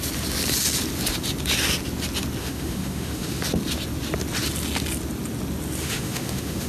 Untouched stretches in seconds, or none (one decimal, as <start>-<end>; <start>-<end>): 0.0-2.4; 3.4-5.8